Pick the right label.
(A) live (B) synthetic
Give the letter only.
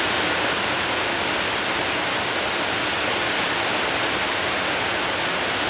A